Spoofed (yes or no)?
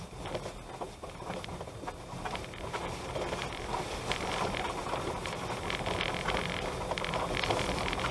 no